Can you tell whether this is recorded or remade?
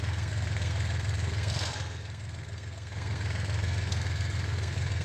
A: remade